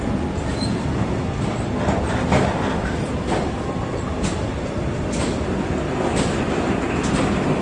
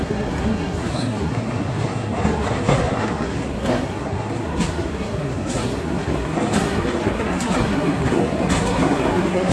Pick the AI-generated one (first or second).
second